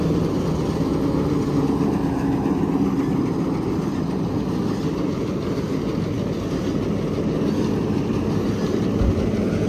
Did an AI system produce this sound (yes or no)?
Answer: no